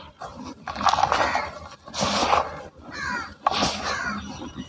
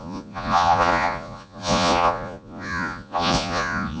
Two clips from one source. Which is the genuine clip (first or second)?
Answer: first